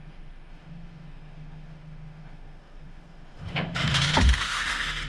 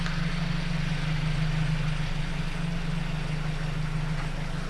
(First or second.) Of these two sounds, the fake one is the first